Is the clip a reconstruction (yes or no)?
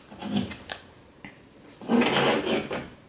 no